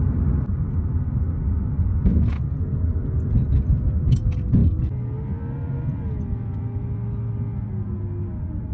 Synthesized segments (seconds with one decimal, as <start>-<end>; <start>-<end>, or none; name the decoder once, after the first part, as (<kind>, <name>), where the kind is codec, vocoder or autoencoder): none